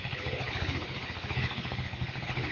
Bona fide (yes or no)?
no